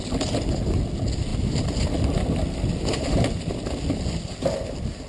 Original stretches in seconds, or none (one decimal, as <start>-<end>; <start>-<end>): 0.0-5.1